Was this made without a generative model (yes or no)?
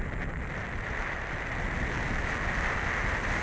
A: yes